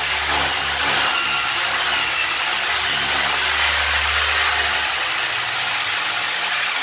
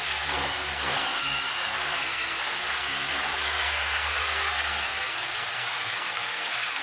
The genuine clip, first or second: first